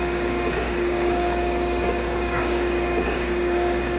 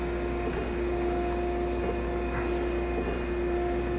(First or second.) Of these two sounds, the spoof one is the first